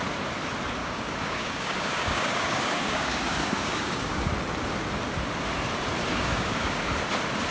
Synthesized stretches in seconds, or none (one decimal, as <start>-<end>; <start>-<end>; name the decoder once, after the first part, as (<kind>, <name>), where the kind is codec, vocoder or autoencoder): 0.8-4.3 (codec, DAC); 6.0-6.9

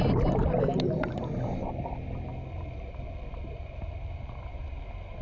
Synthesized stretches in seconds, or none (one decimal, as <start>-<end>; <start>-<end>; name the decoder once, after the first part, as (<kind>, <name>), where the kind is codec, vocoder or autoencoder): none

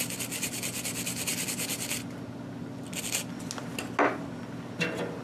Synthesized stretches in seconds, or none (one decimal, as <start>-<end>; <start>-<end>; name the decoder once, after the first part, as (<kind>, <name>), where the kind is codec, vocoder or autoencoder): none

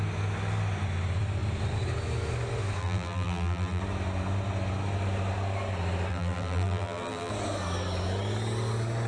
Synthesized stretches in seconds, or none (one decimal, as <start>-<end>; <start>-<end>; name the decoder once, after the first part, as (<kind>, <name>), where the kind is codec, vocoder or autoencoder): 2.8-3.8 (vocoder, BigVGAN v2); 6.1-7.3

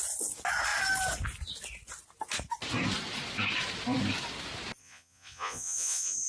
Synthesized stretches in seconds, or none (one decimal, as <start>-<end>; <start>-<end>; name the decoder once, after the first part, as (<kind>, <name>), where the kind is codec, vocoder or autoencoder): 4.8-6.3 (vocoder, Vocos)

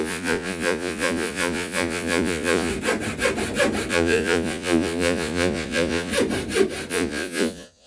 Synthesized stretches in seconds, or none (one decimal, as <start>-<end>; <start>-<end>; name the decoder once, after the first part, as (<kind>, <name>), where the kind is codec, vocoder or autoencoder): 0.0-2.7 (vocoder, Vocos); 3.9-6.1; 6.9-7.9

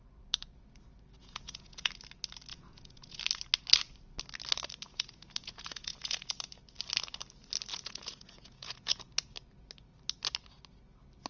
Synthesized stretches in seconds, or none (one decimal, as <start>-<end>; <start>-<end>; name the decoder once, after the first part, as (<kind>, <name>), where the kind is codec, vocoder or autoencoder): 1.2-1.9 (vocoder, Vocos); 2.5-3.2; 4.9-6.3; 7.7-9.0

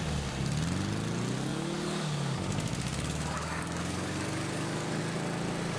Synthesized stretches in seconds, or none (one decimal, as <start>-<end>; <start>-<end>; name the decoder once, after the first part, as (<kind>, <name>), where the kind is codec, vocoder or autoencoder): 1.5-5.0 (codec, DAC)